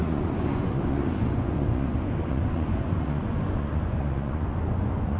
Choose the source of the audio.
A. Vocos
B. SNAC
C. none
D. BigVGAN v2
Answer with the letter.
A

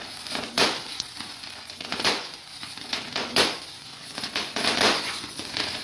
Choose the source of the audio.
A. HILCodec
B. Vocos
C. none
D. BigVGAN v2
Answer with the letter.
B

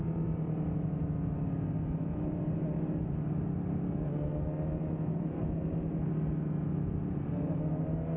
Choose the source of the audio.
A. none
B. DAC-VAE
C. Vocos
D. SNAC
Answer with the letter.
A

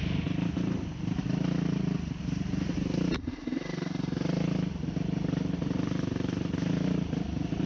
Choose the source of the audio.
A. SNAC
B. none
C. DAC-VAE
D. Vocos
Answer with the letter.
B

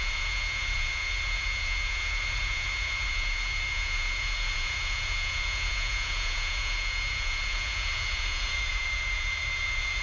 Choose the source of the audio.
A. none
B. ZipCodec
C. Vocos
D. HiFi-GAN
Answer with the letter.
C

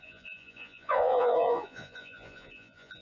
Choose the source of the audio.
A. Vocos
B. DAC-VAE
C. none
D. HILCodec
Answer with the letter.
A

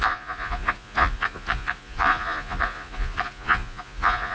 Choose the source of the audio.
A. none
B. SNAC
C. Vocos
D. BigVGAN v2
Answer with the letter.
C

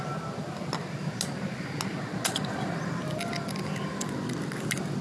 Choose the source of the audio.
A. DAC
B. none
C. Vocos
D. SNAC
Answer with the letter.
B